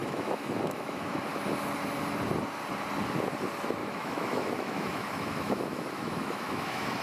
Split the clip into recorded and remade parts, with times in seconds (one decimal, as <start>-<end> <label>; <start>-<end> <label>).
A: 0.0-1.2 remade; 1.2-3.8 recorded; 3.8-7.0 remade